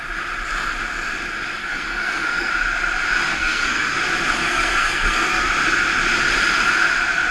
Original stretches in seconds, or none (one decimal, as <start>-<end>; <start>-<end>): 0.0-1.6; 2.5-3.3; 4.0-4.4; 5.5-7.3